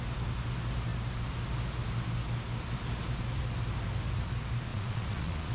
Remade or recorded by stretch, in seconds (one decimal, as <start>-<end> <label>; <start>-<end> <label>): 0.0-4.7 recorded; 4.7-5.5 remade